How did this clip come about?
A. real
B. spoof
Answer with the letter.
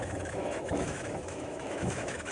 B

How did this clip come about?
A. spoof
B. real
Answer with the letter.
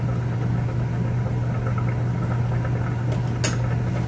B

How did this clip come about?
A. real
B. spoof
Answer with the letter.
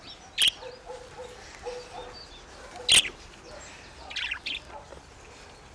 A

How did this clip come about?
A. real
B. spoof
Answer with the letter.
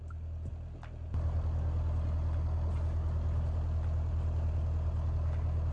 A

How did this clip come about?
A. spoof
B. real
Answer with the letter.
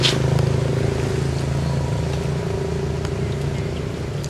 B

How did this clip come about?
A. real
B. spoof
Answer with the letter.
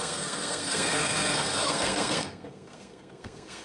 B